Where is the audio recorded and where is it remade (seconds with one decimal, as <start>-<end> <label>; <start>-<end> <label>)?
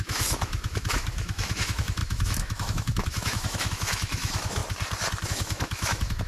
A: 0.0-4.6 remade; 4.6-5.3 recorded; 5.3-6.3 remade